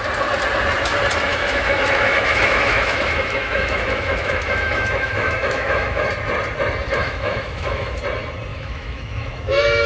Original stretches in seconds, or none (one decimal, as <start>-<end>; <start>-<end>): 0.0-1.3; 6.1-7.0; 8.0-8.5